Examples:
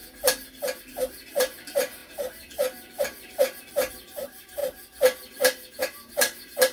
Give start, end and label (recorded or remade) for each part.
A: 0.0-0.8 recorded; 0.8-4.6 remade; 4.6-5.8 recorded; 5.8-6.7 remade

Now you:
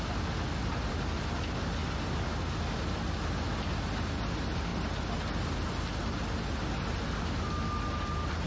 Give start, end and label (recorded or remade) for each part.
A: 0.0-0.6 recorded; 0.6-1.4 remade; 1.4-8.5 recorded